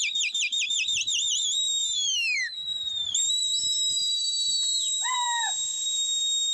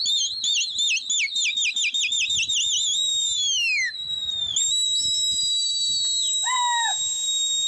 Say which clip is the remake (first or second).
first